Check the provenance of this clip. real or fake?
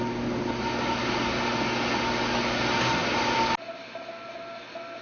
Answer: real